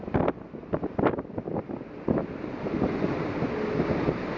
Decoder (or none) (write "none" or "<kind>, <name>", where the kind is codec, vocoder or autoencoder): none